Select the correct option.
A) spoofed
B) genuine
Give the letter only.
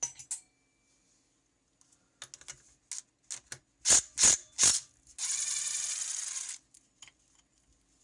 B